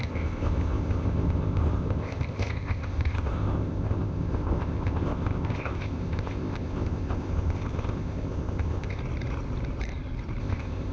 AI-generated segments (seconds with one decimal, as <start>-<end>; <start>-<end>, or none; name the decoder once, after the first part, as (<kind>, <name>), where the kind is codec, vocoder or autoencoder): 0.0-9.0 (codec, ZipCodec); 10.4-10.9